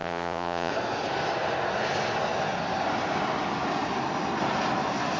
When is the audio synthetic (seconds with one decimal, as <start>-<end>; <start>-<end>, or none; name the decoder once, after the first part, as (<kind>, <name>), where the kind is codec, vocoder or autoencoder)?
0.0-0.7 (vocoder, Vocos)